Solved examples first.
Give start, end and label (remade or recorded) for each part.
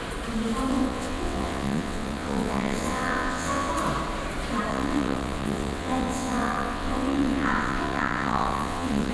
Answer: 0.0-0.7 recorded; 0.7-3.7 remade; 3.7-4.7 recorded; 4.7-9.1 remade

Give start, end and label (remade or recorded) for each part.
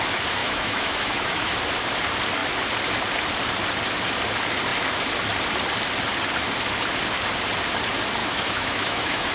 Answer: 0.0-0.4 recorded; 0.4-1.5 remade; 1.5-8.2 recorded; 8.2-9.3 remade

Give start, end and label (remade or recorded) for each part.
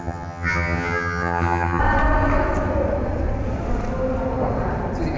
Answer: 0.0-1.8 remade; 1.8-5.2 recorded